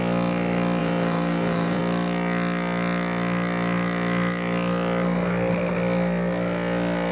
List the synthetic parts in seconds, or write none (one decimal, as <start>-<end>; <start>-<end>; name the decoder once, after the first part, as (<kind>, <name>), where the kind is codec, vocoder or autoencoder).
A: 0.8-1.8 (vocoder, BigVGAN v2)